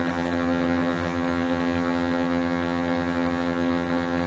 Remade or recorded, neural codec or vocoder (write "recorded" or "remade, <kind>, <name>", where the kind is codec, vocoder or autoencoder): remade, vocoder, HiFi-GAN